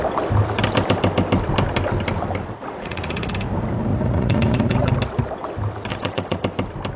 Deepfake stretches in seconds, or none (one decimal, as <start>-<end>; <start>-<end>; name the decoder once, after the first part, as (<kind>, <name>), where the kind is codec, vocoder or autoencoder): 2.6-3.3 (vocoder, Vocos); 3.9-4.9; 5.9-6.4